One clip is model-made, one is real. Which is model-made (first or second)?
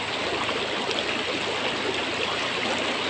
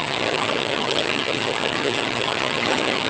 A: second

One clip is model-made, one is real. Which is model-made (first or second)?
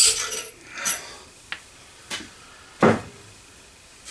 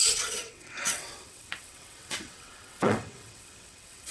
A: second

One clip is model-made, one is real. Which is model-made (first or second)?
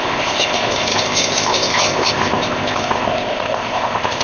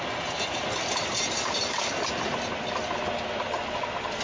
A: first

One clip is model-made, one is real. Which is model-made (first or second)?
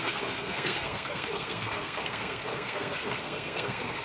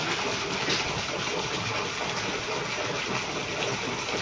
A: first